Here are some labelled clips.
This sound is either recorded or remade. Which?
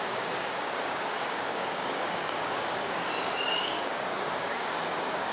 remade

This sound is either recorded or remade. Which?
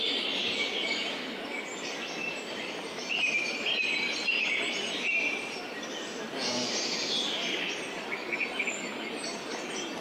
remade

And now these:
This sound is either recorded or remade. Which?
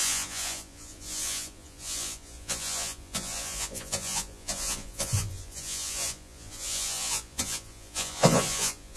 remade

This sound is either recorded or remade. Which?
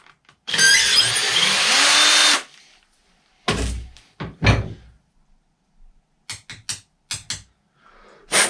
recorded